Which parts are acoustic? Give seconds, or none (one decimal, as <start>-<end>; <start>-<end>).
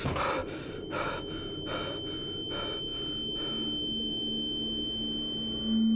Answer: 0.0-0.4; 1.2-6.0